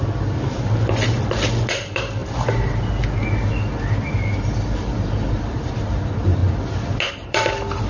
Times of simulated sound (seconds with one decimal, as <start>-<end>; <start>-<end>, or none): 0.0-6.4; 7.1-7.9